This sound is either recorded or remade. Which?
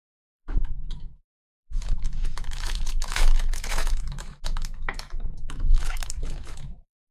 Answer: remade